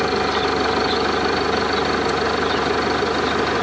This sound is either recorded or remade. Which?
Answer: recorded